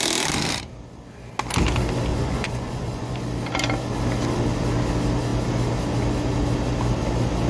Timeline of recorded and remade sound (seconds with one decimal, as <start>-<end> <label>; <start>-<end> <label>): 0.0-2.1 recorded; 2.1-3.2 remade; 3.2-7.5 recorded